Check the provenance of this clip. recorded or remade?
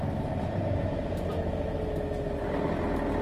recorded